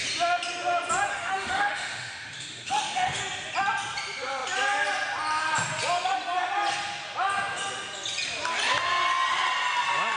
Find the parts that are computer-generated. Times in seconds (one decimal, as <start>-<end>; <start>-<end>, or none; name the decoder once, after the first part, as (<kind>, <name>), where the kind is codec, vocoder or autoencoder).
1.1-3.2 (autoencoder, DAC-VAE)